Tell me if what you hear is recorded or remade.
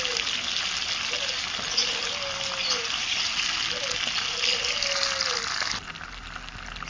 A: recorded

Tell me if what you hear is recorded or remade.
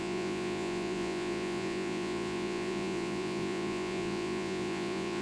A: remade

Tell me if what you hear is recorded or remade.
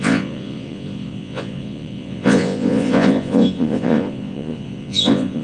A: remade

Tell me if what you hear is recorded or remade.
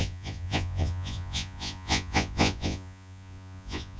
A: remade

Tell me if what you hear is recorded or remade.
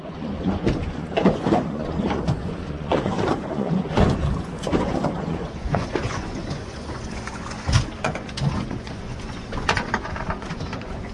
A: remade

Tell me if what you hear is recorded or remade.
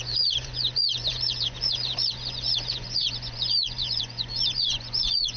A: remade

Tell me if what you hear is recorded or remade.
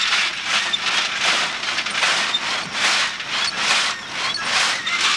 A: recorded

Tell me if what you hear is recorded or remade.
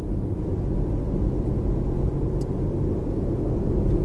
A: recorded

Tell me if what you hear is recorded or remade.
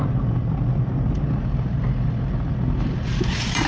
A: recorded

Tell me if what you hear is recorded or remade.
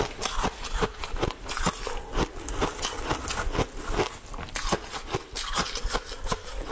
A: recorded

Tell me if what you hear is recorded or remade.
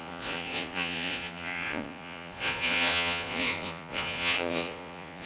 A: remade